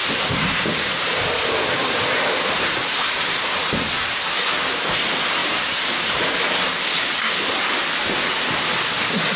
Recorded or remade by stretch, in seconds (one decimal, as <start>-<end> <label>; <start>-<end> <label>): 0.0-4.1 remade; 4.1-5.4 recorded; 5.4-7.7 remade; 7.7-9.4 recorded